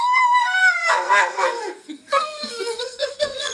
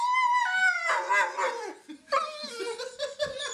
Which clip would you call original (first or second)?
second